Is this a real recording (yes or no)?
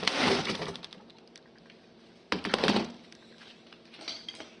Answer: no